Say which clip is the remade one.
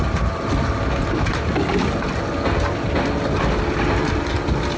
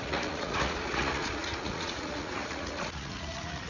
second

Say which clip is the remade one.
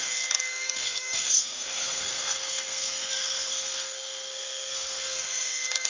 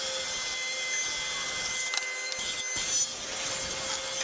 first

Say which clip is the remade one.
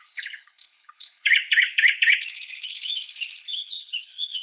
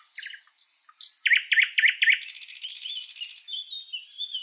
first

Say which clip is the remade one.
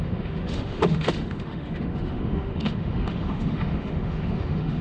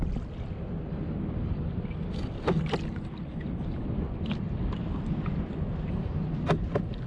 first